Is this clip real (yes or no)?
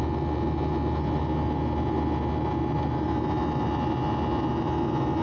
yes